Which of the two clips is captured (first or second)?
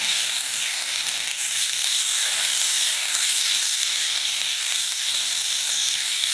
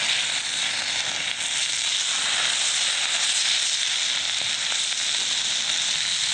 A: second